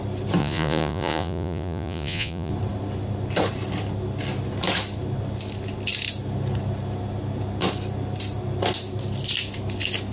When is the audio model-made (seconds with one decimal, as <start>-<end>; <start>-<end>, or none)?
0.4-2.5